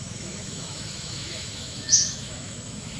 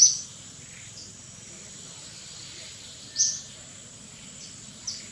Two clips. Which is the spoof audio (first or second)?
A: first